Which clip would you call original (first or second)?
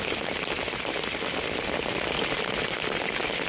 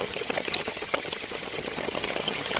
first